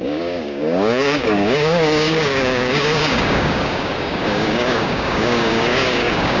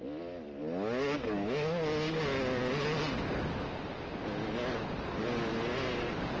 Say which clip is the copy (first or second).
first